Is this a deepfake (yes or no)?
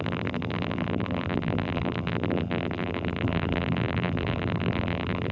yes